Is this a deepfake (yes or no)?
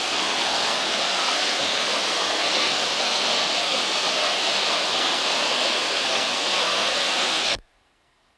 yes